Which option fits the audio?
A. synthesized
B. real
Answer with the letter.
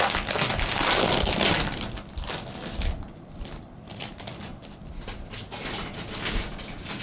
B